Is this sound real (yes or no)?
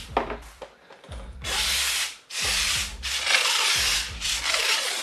no